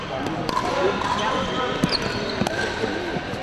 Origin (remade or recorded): recorded